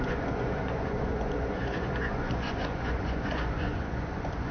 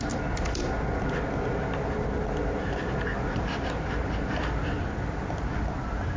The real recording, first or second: second